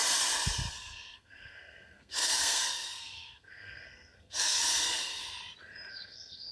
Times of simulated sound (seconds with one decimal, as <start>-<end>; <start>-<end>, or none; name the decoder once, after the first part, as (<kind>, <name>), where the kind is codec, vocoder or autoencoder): 0.7-5.2 (codec, SNAC); 5.9-6.5